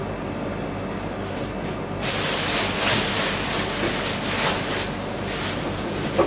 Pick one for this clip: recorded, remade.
recorded